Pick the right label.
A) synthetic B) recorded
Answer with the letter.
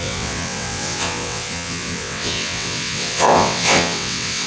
A